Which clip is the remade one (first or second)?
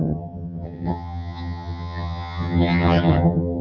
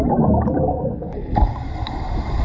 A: first